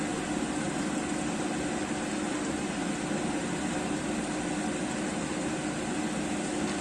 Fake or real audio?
real